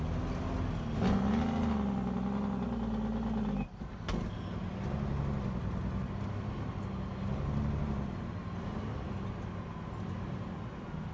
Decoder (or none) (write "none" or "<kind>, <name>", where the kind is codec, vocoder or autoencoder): none